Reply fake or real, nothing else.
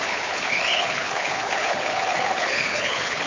fake